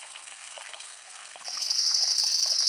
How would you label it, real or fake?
fake